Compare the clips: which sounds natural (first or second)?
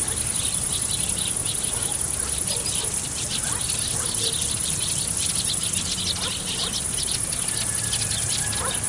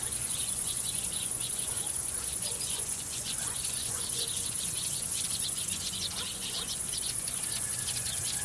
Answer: first